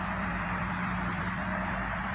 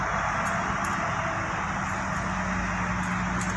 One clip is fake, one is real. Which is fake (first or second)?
first